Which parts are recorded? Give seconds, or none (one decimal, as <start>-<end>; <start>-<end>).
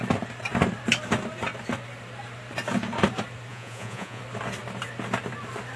0.0-3.5; 4.2-5.8